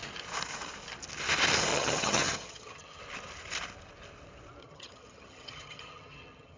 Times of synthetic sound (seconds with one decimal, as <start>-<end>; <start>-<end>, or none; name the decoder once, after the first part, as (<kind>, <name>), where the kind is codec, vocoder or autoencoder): 1.7-3.0 (vocoder, HiFi-GAN); 4.6-6.6